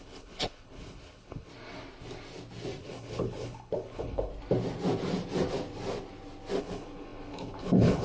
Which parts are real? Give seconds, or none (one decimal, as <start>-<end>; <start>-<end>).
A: 1.5-2.8; 4.3-6.6